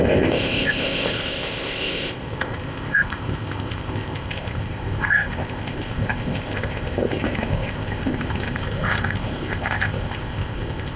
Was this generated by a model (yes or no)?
yes